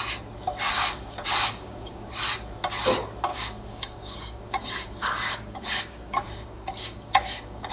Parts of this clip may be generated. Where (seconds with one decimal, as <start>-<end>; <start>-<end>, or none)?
0.7-2.1; 3.3-7.7